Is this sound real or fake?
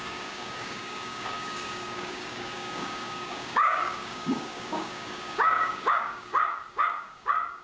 fake